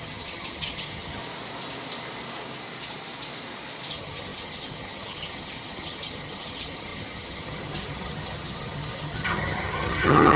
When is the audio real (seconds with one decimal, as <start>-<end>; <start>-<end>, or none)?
1.2-3.9